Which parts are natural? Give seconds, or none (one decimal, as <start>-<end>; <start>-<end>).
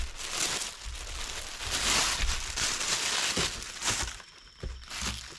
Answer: 0.0-5.4